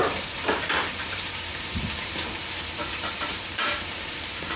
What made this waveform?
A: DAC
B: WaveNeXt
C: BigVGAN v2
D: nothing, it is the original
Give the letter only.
C